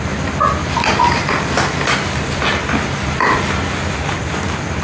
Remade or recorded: recorded